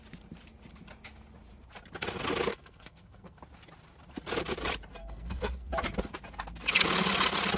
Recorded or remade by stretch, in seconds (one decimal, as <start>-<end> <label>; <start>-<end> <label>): 0.0-2.5 recorded; 2.5-3.4 remade; 3.4-5.0 recorded; 5.0-5.7 remade; 5.7-7.6 recorded

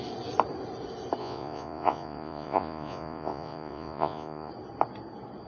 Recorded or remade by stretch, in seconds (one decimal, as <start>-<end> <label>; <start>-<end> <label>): 0.0-1.2 recorded; 1.2-4.5 remade; 4.5-5.5 recorded

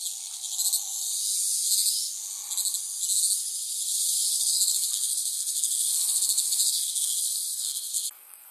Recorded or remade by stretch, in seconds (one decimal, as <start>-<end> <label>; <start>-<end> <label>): 0.0-4.3 recorded; 4.3-8.5 remade

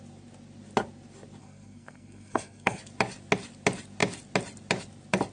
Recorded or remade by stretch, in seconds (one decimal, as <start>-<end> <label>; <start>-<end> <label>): 0.0-1.4 recorded; 1.4-2.8 remade; 2.8-5.3 recorded